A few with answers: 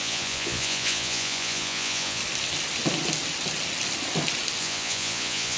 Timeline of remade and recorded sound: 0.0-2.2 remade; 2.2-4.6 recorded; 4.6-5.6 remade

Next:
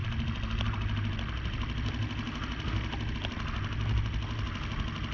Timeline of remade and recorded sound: 0.0-5.1 recorded

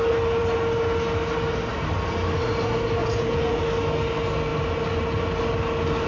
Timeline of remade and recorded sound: 0.0-3.0 recorded; 3.0-3.6 remade; 3.6-6.1 recorded

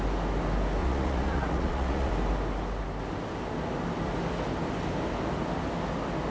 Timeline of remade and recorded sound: 0.0-0.8 recorded; 0.8-2.1 remade; 2.1-6.3 recorded

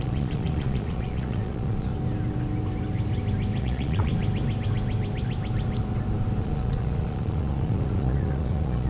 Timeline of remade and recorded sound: 0.0-1.9 remade; 1.9-3.6 recorded; 3.6-4.1 remade; 4.1-6.4 recorded; 6.4-8.9 remade

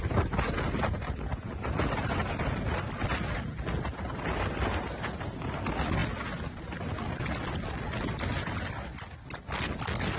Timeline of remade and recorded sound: 0.0-10.2 recorded

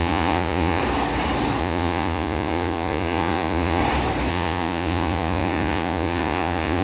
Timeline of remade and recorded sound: 0.0-0.8 remade; 0.8-1.6 recorded; 1.6-3.8 remade; 3.8-4.3 recorded; 4.3-6.8 remade